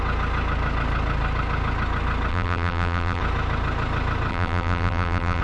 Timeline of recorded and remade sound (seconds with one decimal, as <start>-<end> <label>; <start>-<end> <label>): 0.0-2.3 recorded; 2.3-3.2 remade; 3.2-4.3 recorded; 4.3-5.4 remade